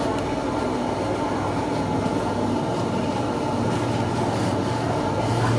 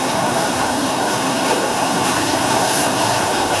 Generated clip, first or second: second